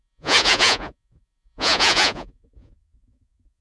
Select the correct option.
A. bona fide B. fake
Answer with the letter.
B